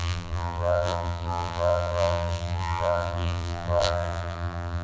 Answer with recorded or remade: remade